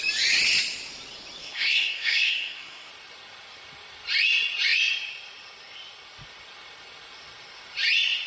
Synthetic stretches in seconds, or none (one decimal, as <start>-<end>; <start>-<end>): 1.4-2.9